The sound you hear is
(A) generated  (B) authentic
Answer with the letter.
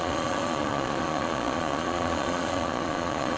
A